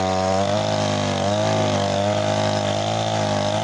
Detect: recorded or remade recorded